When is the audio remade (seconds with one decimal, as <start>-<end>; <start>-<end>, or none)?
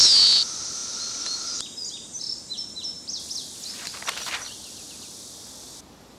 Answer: none